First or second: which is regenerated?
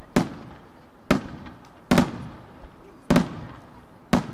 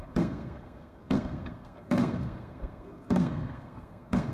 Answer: second